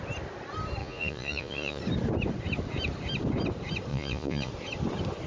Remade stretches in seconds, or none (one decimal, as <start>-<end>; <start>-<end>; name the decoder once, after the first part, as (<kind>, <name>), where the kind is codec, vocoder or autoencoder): 0.8-1.8 (vocoder, Vocos); 3.9-4.5

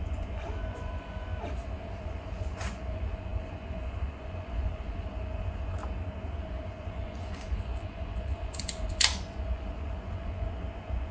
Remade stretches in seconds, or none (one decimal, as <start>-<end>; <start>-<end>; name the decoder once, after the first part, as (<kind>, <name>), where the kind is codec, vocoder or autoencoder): 0.0-1.3 (vocoder, Vocos); 2.0-5.8; 6.7-11.1

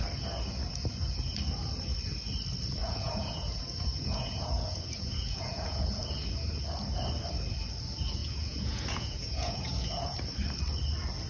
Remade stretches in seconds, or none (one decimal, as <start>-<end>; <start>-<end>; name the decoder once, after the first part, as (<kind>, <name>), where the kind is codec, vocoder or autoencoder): 2.8-6.0 (vocoder, Vocos); 8.2-10.2

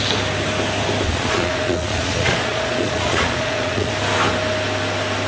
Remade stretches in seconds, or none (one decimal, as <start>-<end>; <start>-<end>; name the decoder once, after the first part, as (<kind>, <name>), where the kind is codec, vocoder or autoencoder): 1.1-3.9 (vocoder, Vocos)

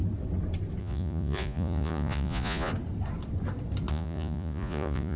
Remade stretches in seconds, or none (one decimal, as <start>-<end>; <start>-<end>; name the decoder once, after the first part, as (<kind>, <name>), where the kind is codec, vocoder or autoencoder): 0.8-2.7 (vocoder, Vocos); 3.9-5.2

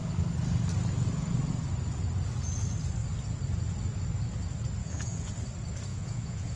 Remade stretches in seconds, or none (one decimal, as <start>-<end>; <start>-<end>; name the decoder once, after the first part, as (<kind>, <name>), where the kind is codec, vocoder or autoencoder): 4.8-5.3 (vocoder, Vocos); 5.9-6.6

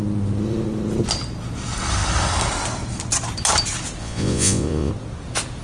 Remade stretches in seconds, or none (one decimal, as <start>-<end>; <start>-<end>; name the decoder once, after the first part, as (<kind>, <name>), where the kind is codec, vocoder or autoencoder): 4.0-4.9 (vocoder, Vocos)